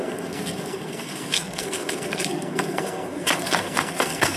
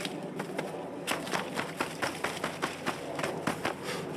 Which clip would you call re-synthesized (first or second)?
first